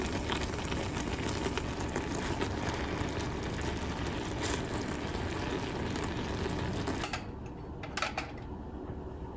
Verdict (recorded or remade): recorded